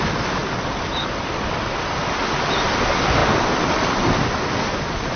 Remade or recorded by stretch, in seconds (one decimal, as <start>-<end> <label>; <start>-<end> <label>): 0.0-5.2 recorded